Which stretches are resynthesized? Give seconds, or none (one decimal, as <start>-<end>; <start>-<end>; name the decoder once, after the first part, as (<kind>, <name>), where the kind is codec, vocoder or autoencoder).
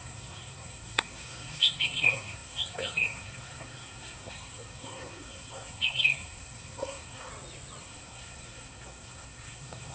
0.0-7.3 (codec, SNAC); 7.8-9.9